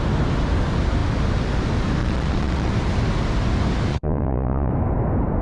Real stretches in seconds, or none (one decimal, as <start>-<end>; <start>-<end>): 0.0-2.0; 2.7-3.9; 4.7-5.4